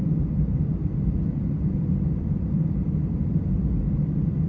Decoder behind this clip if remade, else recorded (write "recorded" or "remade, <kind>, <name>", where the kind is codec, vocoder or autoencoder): recorded